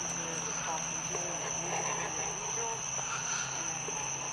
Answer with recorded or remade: recorded